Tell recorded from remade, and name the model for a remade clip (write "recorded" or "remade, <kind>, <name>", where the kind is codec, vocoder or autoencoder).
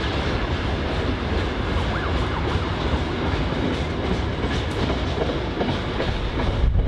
recorded